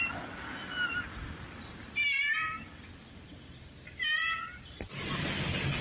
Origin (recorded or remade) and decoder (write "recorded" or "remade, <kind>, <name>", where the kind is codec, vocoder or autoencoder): remade, vocoder, BigVGAN v2